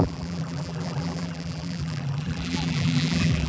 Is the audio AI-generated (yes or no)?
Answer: yes